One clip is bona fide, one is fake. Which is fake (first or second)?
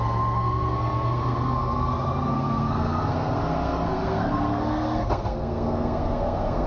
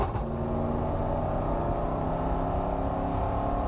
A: first